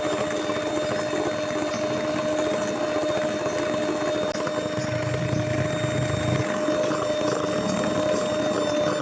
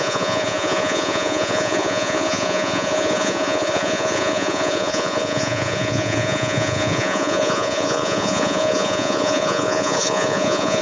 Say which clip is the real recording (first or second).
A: first